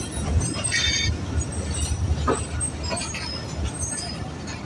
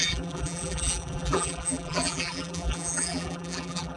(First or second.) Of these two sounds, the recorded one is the first